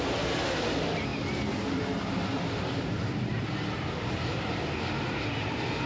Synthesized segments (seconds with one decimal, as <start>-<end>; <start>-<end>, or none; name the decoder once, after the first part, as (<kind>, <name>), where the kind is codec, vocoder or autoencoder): 1.1-4.6 (vocoder, BigVGAN v2)